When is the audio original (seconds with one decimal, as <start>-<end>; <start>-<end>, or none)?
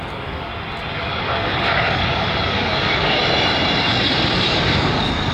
0.5-1.0; 3.2-3.8